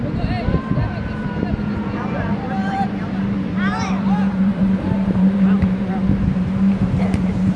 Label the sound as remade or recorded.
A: remade